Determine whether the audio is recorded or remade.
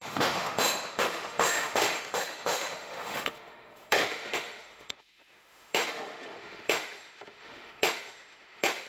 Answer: remade